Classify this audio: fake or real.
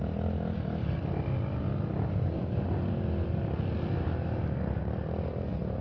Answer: real